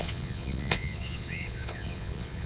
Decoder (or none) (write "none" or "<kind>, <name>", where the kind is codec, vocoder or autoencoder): vocoder, Vocos